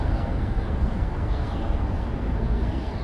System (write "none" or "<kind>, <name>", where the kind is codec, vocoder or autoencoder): codec, SNAC